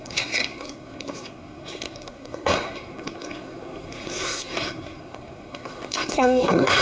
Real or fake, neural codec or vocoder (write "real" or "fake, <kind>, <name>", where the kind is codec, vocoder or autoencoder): fake, codec, SNAC